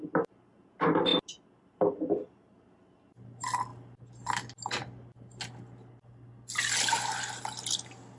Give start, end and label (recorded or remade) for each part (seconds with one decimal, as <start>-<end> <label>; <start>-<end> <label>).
0.0-8.2 recorded